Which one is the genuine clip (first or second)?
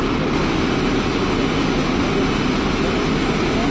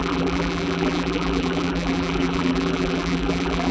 first